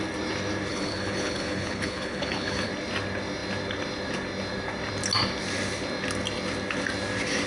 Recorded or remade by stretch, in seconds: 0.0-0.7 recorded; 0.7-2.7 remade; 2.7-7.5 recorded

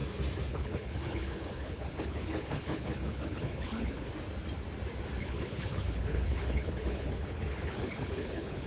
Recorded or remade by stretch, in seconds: 0.0-0.5 recorded; 0.5-4.1 remade; 4.1-5.2 recorded; 5.2-8.7 remade

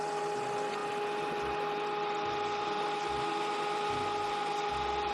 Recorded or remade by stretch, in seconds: 0.0-5.1 recorded

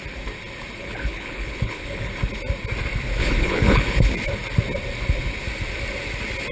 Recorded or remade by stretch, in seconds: 0.0-0.8 recorded; 0.8-2.1 remade; 2.1-3.2 recorded; 3.2-4.0 remade; 4.0-6.5 recorded

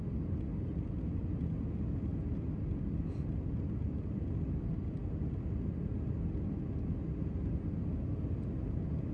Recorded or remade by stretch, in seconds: 0.0-9.1 recorded

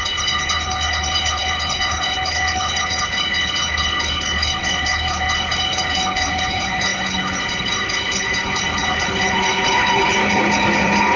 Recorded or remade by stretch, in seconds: 0.0-11.2 remade